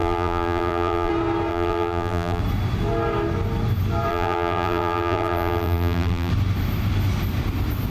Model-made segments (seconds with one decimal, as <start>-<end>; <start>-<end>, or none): 0.0-1.1; 1.5-2.4; 4.1-6.3